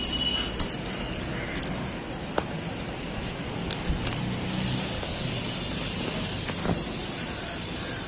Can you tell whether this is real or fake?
real